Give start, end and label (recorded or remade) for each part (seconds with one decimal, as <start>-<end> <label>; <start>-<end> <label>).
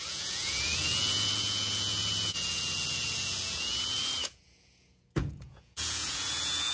0.0-6.7 remade